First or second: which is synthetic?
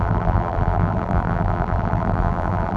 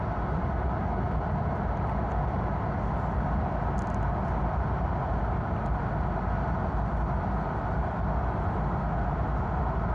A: first